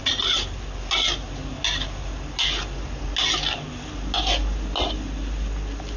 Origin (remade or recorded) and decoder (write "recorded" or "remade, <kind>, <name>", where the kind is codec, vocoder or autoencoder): recorded